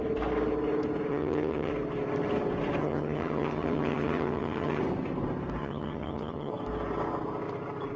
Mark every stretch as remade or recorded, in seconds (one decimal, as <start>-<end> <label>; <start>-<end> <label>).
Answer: 0.0-1.1 recorded; 1.1-1.7 remade; 1.7-2.8 recorded; 2.8-4.8 remade; 4.8-5.6 recorded; 5.6-6.5 remade; 6.5-8.0 recorded